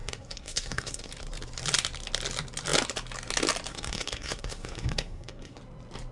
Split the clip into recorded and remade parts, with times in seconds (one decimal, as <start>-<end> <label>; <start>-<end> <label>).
0.0-1.1 remade; 1.1-3.7 recorded; 3.7-5.6 remade; 5.6-6.1 recorded